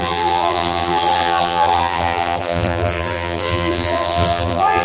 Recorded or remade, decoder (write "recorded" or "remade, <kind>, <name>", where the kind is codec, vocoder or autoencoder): remade, vocoder, BigVGAN v2